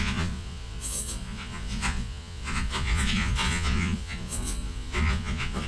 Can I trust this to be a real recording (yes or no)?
no